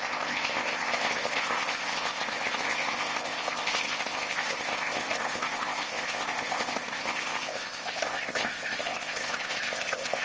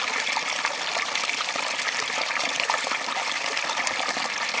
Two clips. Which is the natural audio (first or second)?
second